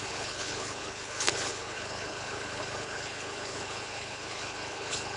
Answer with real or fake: fake